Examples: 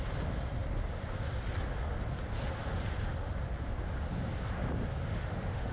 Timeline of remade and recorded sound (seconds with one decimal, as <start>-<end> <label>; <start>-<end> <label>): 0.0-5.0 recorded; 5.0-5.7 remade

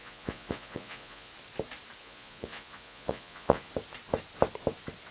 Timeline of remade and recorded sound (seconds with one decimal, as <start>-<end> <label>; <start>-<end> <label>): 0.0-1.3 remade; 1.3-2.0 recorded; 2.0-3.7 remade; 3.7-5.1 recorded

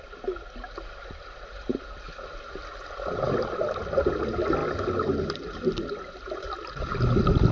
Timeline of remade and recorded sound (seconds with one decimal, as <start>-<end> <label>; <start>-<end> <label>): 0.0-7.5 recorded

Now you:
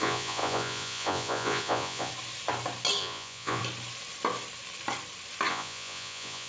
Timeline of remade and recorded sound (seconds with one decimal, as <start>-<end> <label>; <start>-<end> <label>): 0.0-2.1 remade; 2.1-3.0 recorded; 3.0-3.6 remade; 3.6-5.5 recorded; 5.5-6.5 remade